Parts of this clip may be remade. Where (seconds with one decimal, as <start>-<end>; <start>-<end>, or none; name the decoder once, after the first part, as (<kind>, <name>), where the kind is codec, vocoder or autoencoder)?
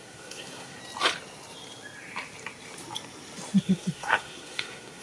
0.0-0.8 (codec, SNAC); 3.6-5.0